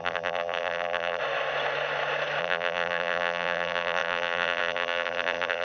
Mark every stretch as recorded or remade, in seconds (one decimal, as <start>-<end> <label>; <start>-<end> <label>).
0.0-1.2 remade; 1.2-2.4 recorded; 2.4-5.6 remade